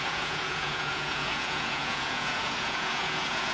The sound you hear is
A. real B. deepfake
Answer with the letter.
B